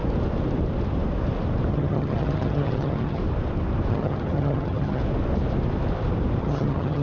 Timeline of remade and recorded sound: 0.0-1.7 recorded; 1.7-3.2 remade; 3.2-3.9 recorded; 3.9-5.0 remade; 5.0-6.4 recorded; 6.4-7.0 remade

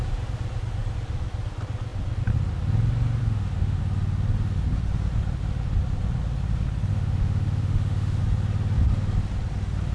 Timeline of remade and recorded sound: 0.0-3.2 recorded; 3.2-3.8 remade; 3.8-6.9 recorded; 6.9-8.2 remade; 8.2-9.9 recorded

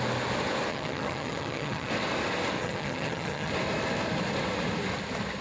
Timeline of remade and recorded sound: 0.0-0.7 recorded; 0.7-1.9 remade; 1.9-2.6 recorded; 2.6-3.5 remade; 3.5-5.4 recorded

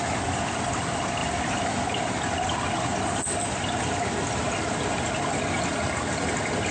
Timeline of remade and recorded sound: 0.0-6.7 recorded

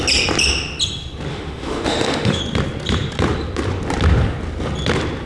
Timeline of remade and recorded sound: 0.0-1.3 recorded; 1.3-2.4 remade; 2.4-5.3 recorded

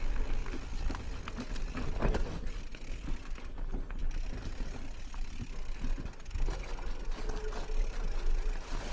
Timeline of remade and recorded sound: 0.0-8.9 recorded